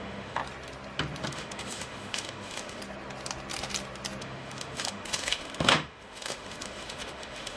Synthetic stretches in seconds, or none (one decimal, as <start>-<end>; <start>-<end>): 0.0-0.4; 1.3-2.8; 4.2-7.6